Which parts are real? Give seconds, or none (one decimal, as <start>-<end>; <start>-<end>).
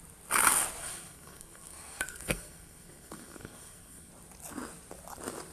0.0-0.8; 4.1-5.5